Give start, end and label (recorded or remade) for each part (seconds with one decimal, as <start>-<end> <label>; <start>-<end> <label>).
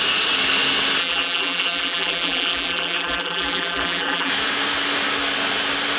0.0-1.0 recorded; 1.0-4.3 remade; 4.3-6.0 recorded